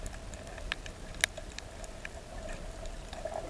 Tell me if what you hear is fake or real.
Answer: real